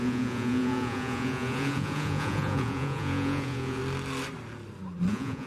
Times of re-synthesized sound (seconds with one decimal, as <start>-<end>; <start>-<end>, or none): 0.0-3.8; 5.1-5.5